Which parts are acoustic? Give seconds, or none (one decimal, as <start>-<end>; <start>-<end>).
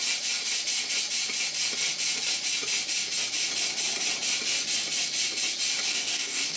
0.0-5.9